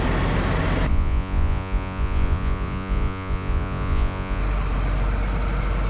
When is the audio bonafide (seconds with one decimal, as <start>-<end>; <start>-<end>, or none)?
0.0-0.9; 4.4-5.9